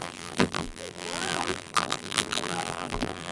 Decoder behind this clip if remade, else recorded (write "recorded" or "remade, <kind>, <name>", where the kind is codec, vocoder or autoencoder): remade, vocoder, BigVGAN v2